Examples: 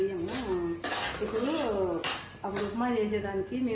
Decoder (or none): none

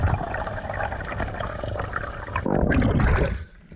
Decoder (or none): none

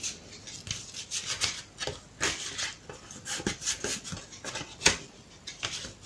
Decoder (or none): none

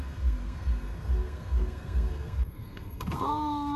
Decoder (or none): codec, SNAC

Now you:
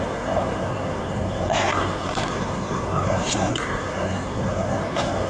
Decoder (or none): codec, SNAC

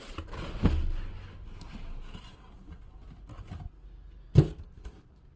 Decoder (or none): none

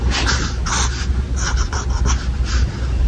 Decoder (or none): none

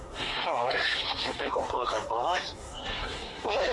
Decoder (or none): codec, SNAC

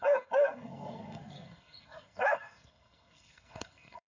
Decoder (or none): codec, SNAC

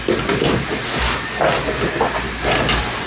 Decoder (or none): none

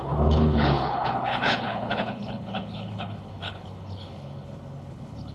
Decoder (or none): codec, HILCodec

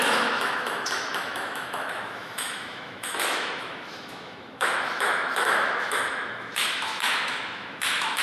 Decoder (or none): autoencoder, DAC-VAE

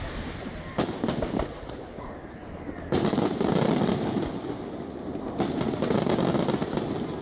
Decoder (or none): none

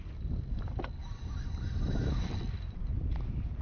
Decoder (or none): none